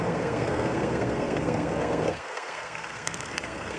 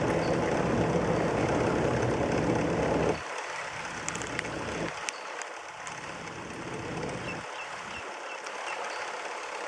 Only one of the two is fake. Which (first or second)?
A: first